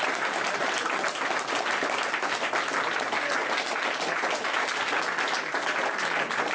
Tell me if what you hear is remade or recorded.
recorded